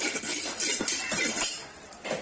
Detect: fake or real real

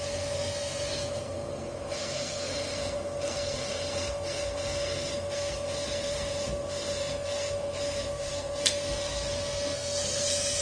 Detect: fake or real fake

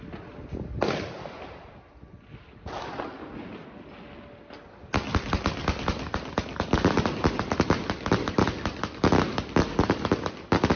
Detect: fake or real real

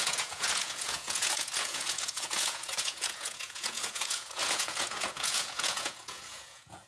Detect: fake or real fake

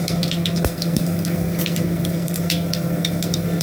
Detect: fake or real fake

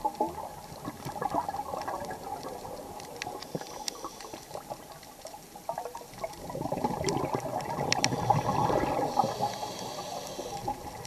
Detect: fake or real real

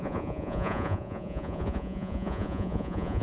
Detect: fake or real fake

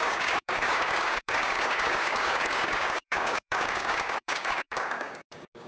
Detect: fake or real fake